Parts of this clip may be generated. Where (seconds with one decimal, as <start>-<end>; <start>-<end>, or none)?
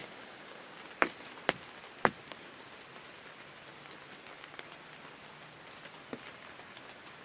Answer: 0.0-0.8